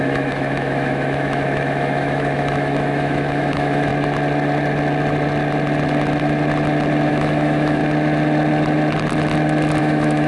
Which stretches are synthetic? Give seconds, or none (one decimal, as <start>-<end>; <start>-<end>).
0.0-3.9; 7.1-7.8; 9.8-10.3